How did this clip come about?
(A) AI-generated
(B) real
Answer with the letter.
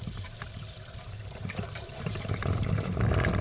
A